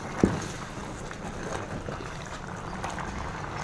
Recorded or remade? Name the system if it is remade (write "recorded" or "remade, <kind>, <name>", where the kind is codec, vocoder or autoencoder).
recorded